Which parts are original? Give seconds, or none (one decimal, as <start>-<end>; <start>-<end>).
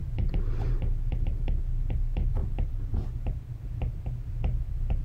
0.8-2.4; 3.6-5.0